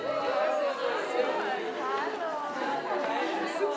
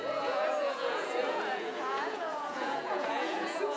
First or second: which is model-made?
second